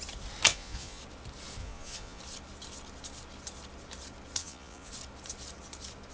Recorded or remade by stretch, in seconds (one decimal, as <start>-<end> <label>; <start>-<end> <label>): 0.0-0.5 recorded; 0.5-1.0 remade; 1.0-1.6 recorded; 1.6-2.2 remade; 2.2-4.4 recorded; 4.4-4.9 remade; 4.9-6.1 recorded